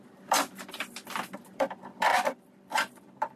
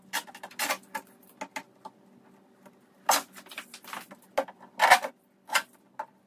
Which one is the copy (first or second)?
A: first